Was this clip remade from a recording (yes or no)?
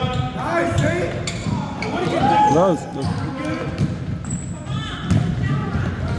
no